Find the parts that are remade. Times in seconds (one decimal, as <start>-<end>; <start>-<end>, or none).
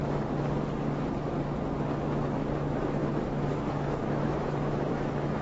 2.0-5.4